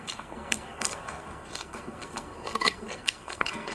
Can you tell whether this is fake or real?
fake